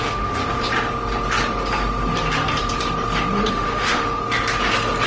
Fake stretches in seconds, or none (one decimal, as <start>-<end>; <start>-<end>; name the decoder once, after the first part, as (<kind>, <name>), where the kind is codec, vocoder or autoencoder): 0.0-0.4 (autoencoder, DAC-VAE); 3.5-4.2